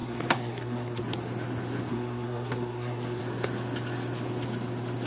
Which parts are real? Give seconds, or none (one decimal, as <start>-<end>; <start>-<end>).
1.0-1.9; 3.2-5.1